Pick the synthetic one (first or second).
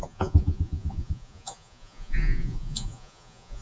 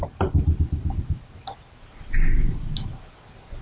first